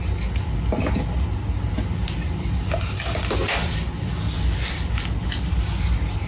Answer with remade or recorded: recorded